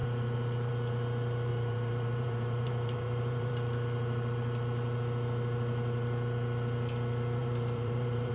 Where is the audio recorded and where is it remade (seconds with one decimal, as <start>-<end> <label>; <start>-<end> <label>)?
0.0-1.5 recorded; 1.5-3.5 remade; 3.5-7.4 recorded; 7.4-8.3 remade